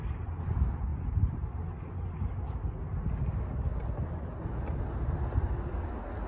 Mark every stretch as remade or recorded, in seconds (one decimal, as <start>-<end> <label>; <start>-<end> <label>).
0.0-6.3 recorded